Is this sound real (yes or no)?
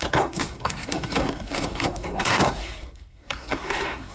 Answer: no